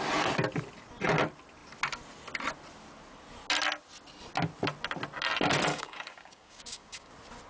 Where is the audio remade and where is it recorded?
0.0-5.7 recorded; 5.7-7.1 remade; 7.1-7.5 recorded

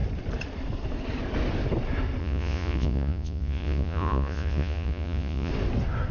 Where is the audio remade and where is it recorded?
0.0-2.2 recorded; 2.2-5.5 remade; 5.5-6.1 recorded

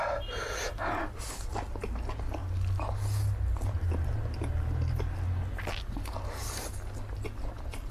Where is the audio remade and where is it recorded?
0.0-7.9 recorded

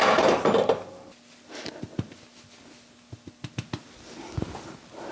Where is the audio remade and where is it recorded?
0.0-5.1 recorded

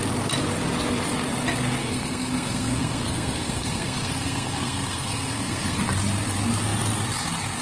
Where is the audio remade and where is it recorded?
0.0-1.8 recorded; 1.8-5.8 remade; 5.8-7.6 recorded

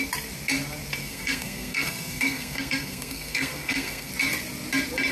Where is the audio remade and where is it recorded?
0.0-1.0 recorded; 1.0-4.1 remade; 4.1-5.1 recorded

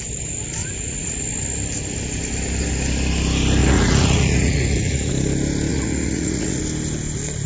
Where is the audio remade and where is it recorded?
0.0-0.6 recorded; 0.6-1.2 remade; 1.2-3.6 recorded; 3.6-5.1 remade; 5.1-5.7 recorded; 5.7-6.6 remade; 6.6-7.5 recorded

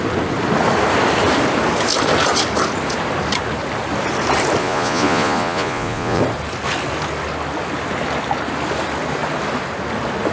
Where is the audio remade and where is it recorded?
0.0-4.6 recorded; 4.6-6.2 remade; 6.2-10.3 recorded